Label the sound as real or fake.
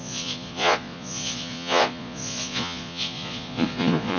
fake